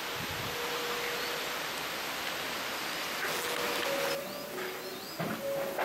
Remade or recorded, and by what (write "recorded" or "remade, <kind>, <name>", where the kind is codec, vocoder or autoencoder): recorded